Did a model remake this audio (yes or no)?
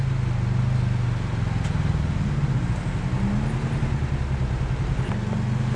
no